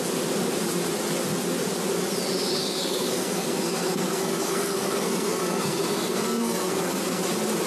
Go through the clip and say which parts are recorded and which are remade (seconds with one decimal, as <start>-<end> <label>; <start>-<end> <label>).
0.0-2.6 recorded; 2.6-7.2 remade; 7.2-7.7 recorded